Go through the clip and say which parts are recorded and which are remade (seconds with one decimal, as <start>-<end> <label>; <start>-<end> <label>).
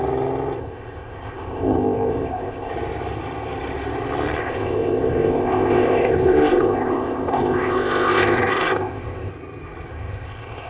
0.0-0.6 recorded; 0.6-2.7 remade; 2.7-4.4 recorded; 4.4-9.3 remade; 9.3-9.9 recorded; 9.9-10.7 remade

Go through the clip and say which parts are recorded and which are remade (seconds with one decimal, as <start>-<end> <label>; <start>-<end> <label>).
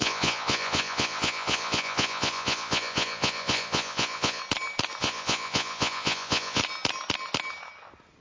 0.0-4.4 remade; 4.4-5.0 recorded; 5.0-6.6 remade; 6.6-8.2 recorded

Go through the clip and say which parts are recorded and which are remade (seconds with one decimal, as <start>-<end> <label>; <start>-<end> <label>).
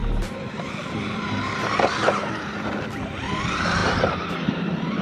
0.0-5.0 remade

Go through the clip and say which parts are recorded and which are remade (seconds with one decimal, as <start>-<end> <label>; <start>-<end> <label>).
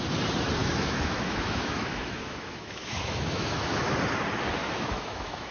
0.0-0.6 recorded; 0.6-3.9 remade; 3.9-4.6 recorded; 4.6-5.5 remade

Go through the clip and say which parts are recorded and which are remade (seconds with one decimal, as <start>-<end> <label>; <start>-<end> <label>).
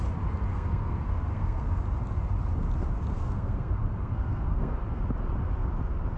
0.0-0.5 recorded; 0.5-1.8 remade; 1.8-3.1 recorded; 3.1-5.0 remade; 5.0-6.2 recorded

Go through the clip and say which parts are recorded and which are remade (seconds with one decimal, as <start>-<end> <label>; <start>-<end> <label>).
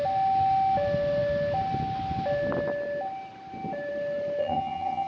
0.0-4.4 recorded; 4.4-5.1 remade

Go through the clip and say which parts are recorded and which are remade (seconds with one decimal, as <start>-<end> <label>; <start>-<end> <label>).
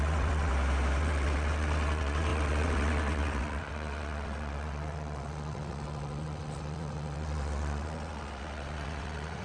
0.0-0.5 remade; 0.5-1.0 recorded; 1.0-9.4 remade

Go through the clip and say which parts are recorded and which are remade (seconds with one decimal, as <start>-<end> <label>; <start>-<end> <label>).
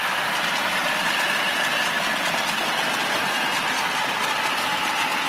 0.0-5.3 recorded